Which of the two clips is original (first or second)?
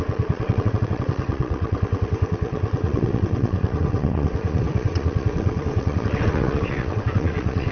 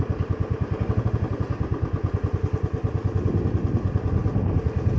second